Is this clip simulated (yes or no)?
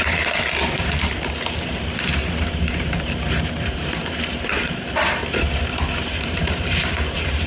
yes